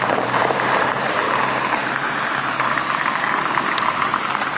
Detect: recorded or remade remade